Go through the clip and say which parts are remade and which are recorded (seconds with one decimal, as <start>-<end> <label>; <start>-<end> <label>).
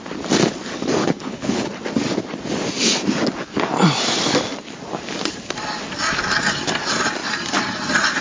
0.0-1.0 recorded; 1.0-1.7 remade; 1.7-8.2 recorded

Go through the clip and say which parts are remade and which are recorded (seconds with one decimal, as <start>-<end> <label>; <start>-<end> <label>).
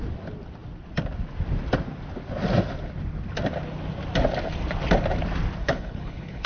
0.0-5.6 recorded; 5.6-6.5 remade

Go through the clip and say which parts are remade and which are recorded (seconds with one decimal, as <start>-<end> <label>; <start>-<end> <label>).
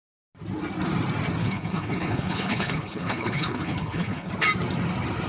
0.0-1.4 recorded; 1.4-4.3 remade; 4.3-5.3 recorded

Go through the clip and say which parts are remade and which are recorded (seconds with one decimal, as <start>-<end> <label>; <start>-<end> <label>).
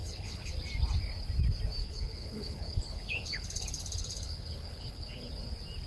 0.0-0.5 remade; 0.5-1.8 recorded; 1.8-5.3 remade; 5.3-5.9 recorded